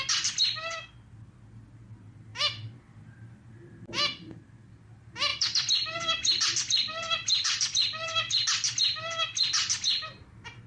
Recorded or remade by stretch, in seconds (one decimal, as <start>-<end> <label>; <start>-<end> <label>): 0.0-5.3 recorded; 5.3-8.3 remade; 8.3-10.7 recorded